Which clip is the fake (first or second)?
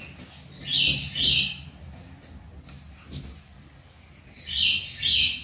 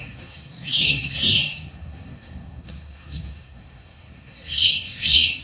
second